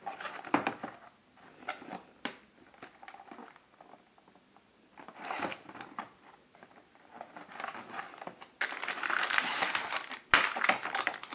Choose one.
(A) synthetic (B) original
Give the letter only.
B